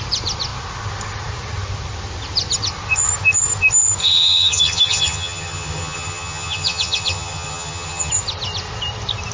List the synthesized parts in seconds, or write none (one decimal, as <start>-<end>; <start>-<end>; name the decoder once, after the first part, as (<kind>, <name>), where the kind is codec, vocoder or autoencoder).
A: 4.0-8.1 (vocoder, HiFi-GAN)